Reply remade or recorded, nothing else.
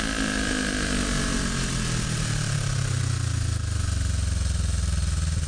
recorded